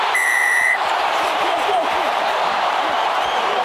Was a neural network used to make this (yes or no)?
yes